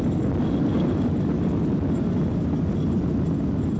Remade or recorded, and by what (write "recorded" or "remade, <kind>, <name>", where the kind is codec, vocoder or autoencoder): recorded